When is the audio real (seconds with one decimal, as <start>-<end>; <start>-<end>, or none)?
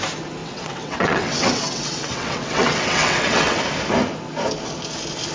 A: 0.0-0.4; 3.6-5.3